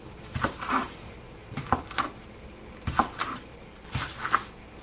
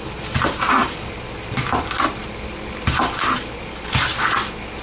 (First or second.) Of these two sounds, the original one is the second